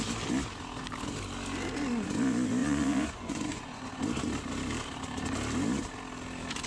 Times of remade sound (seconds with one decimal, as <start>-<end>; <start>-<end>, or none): 2.6-4.0